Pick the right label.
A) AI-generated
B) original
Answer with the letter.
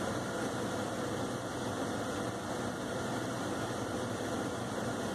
B